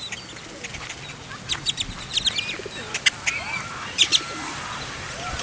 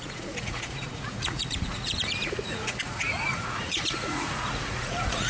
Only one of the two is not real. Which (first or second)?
second